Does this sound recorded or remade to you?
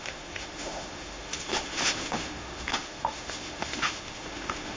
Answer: remade